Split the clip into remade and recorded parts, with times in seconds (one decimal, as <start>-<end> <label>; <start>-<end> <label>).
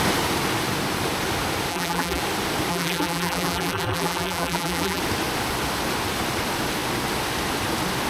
0.0-1.7 recorded; 1.7-2.2 remade; 2.2-2.7 recorded; 2.7-5.0 remade; 5.0-8.1 recorded